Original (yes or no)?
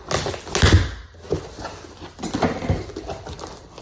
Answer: yes